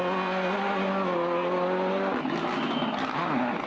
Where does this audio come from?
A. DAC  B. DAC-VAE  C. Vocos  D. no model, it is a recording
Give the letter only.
D